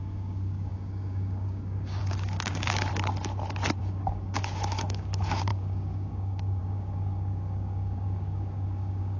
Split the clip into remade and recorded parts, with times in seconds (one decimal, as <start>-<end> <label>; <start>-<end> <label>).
0.0-2.9 remade; 2.9-3.8 recorded; 3.8-9.2 remade